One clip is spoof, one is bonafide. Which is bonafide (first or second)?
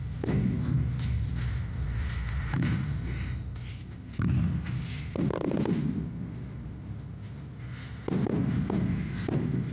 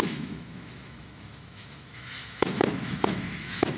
first